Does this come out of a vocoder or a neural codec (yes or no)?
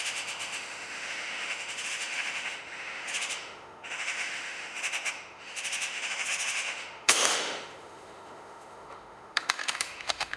yes